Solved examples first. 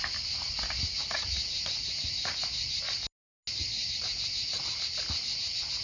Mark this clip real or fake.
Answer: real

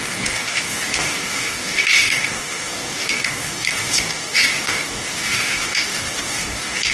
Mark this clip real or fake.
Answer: fake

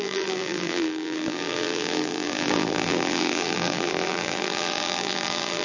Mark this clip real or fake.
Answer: fake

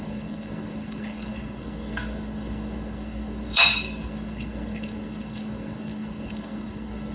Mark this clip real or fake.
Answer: fake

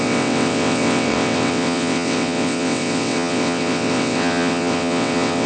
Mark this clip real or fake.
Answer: fake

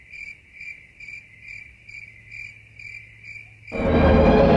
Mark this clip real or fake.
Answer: real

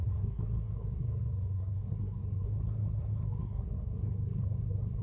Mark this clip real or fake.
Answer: fake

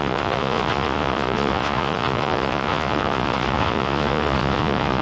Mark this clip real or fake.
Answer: fake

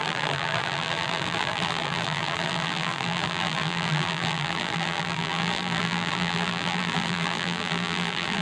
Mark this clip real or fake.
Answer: fake